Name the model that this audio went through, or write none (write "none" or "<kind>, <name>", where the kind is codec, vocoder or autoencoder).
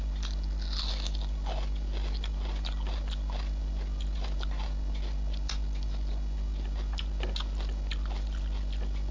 none